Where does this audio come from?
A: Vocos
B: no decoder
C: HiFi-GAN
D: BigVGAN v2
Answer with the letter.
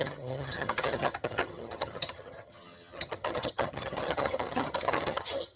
C